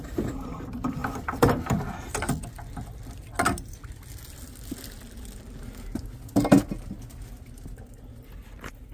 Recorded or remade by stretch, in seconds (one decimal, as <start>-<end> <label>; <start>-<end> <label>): 0.0-8.9 recorded

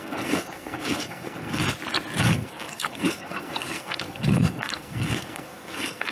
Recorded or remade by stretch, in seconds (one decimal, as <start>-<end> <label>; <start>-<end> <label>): 0.0-1.6 remade; 1.6-2.2 recorded; 2.2-6.1 remade

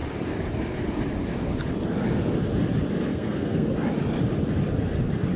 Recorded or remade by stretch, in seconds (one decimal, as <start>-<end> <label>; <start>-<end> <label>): 0.0-3.1 recorded; 3.1-3.7 remade; 3.7-5.4 recorded

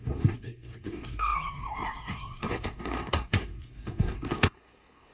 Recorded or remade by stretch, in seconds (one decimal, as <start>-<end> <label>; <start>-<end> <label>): 0.0-5.1 remade

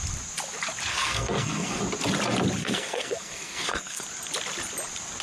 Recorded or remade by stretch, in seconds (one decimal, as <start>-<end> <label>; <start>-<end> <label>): 0.0-0.9 recorded; 0.9-1.8 remade; 1.8-2.6 recorded; 2.6-4.0 remade; 4.0-5.2 recorded

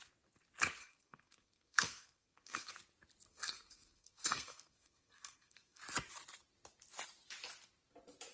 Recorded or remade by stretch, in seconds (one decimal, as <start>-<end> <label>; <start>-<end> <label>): 0.0-0.8 recorded; 0.8-2.7 remade; 2.7-3.3 recorded; 3.3-5.8 remade; 5.8-8.3 recorded

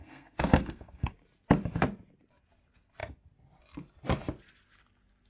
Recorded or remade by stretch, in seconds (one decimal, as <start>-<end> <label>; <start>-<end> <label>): 0.0-1.1 remade; 1.1-5.3 recorded

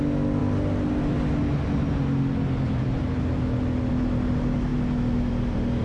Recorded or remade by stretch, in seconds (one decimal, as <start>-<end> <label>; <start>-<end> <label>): 0.0-5.8 recorded